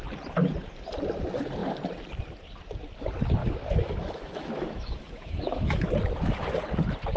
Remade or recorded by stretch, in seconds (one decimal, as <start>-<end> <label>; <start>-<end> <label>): 0.0-3.4 recorded; 3.4-5.9 remade; 5.9-7.2 recorded